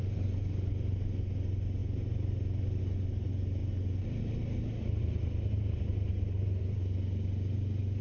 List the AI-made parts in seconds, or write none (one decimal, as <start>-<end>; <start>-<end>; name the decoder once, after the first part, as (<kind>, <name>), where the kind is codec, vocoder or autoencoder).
none